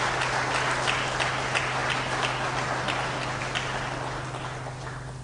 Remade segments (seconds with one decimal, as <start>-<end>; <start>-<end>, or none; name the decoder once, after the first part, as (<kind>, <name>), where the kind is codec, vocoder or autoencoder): none